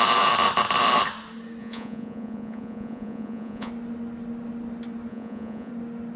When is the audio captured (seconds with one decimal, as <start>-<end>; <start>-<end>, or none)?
0.0-1.6; 3.7-5.1; 5.7-6.2